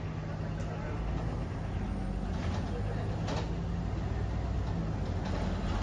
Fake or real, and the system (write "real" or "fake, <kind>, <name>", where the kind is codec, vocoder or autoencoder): real